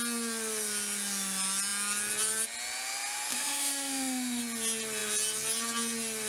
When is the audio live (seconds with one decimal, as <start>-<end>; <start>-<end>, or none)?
0.0-3.3; 4.4-6.3